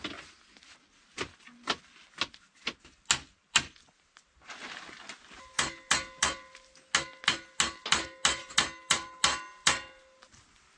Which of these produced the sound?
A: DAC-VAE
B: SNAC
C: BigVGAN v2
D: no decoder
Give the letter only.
D